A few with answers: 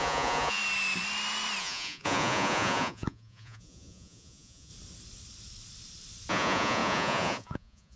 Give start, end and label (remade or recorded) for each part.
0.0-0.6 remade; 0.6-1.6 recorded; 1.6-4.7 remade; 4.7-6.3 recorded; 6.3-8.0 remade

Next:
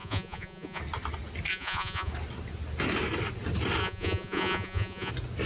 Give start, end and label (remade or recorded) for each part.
0.0-0.8 remade; 0.8-1.5 recorded; 1.5-2.1 remade; 2.1-3.8 recorded; 3.8-5.1 remade; 5.1-5.5 recorded

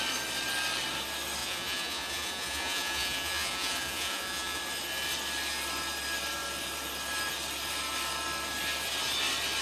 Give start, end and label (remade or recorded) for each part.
0.0-1.4 recorded; 1.4-4.6 remade; 4.6-9.6 recorded

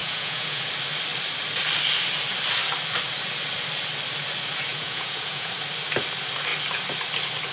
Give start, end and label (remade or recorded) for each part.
0.0-0.6 remade; 0.6-4.7 recorded; 4.7-5.5 remade; 5.5-7.5 recorded

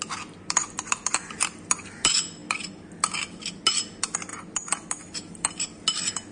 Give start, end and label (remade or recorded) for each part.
0.0-6.3 recorded